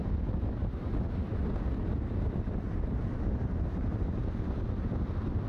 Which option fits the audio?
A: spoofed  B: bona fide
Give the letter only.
B